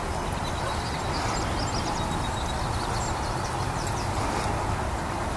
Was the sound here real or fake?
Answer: real